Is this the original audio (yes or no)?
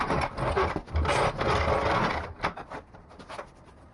yes